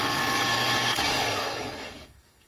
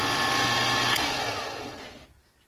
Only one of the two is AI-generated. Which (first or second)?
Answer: first